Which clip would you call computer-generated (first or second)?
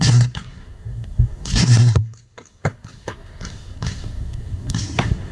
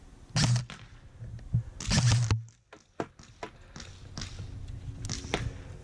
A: first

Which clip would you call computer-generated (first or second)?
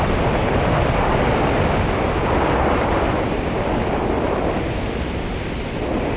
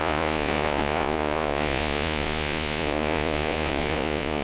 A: second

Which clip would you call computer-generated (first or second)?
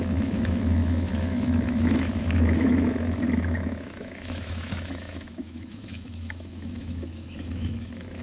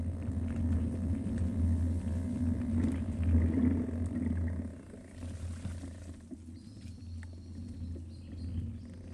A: first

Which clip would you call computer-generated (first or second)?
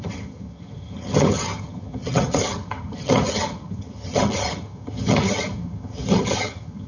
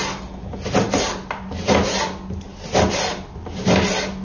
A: first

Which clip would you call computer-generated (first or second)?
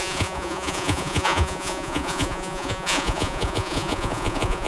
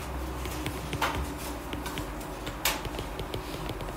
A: first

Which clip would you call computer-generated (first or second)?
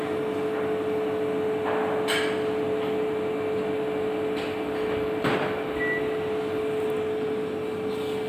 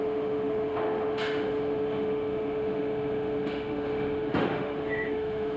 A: second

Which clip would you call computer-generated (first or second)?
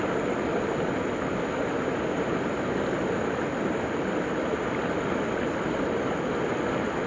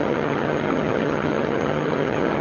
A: second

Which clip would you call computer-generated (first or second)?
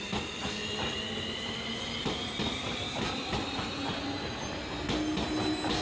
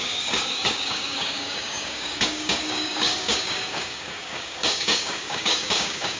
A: second